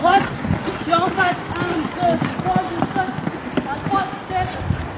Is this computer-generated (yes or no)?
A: no